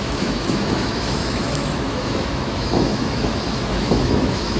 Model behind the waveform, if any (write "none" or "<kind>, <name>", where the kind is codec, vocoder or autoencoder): autoencoder, DAC-VAE